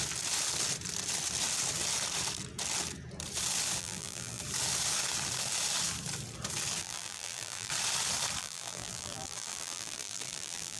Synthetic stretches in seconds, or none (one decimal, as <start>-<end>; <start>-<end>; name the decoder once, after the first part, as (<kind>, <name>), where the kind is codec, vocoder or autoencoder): 3.8-4.4 (vocoder, BigVGAN v2); 6.8-7.7; 8.4-10.8